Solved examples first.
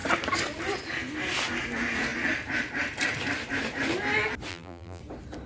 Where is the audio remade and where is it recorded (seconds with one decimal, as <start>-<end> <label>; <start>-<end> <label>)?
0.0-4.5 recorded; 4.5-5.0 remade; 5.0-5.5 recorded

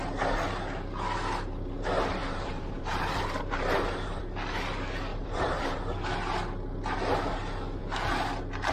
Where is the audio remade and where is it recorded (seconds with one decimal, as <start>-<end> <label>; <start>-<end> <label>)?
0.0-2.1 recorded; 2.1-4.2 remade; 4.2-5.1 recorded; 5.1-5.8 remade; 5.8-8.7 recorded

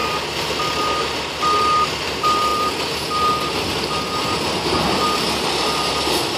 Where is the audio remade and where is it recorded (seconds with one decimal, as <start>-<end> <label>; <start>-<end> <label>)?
0.0-2.5 recorded; 2.5-3.2 remade; 3.2-6.4 recorded

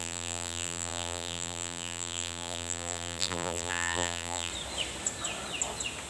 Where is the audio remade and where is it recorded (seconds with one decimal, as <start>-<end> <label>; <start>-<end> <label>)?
0.0-4.5 remade; 4.5-6.1 recorded